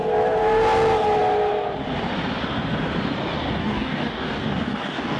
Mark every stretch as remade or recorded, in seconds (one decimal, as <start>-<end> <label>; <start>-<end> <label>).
0.0-3.6 recorded; 3.6-5.2 remade